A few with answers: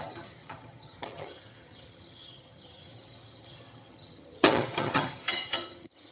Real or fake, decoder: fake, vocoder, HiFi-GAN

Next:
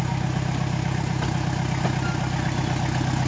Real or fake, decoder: real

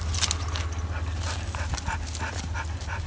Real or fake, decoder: real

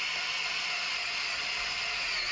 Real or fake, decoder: real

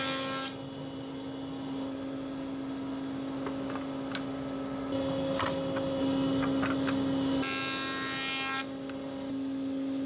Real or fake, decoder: real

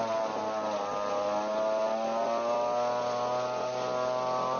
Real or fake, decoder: real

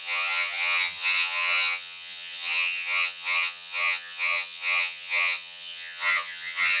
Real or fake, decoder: fake, vocoder, HiFi-GAN